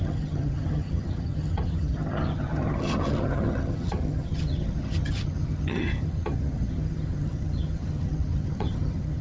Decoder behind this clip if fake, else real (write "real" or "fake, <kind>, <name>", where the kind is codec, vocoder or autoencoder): fake, vocoder, HiFi-GAN